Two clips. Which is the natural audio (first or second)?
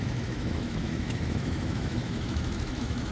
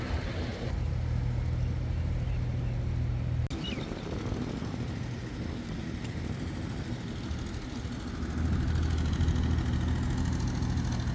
second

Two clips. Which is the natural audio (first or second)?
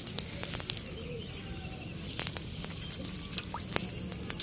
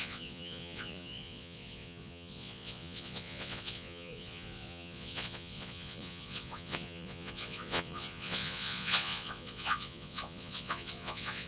first